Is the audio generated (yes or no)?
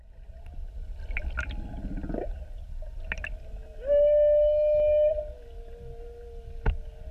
no